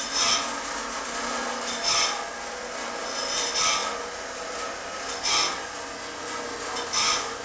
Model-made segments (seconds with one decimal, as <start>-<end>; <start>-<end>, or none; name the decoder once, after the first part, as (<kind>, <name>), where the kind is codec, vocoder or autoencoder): none

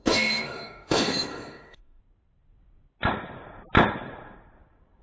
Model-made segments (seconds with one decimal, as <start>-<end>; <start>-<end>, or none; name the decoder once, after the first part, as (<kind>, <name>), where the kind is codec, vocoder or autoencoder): 0.0-2.0 (autoencoder, DAC-VAE)

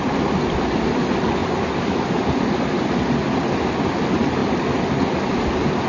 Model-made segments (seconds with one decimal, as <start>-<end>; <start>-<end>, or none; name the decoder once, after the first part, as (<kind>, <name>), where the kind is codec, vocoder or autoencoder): none

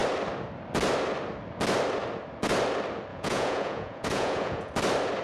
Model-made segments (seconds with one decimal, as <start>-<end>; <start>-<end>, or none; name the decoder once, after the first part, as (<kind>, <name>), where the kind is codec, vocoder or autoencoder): 3.1-4.7 (vocoder, Vocos)